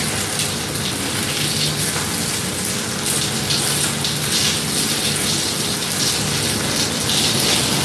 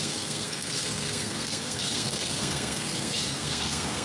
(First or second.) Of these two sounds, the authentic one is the first